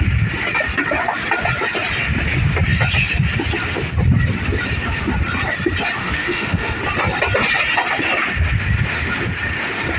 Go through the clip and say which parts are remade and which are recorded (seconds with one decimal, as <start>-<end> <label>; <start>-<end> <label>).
0.0-6.0 recorded; 6.0-6.8 remade; 6.8-10.0 recorded